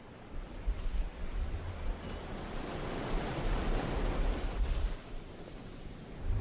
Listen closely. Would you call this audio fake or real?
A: real